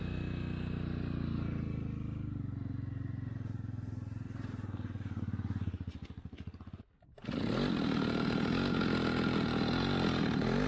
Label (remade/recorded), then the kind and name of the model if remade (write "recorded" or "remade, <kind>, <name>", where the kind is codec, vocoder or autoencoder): recorded